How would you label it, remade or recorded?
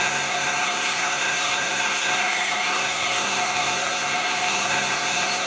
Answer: remade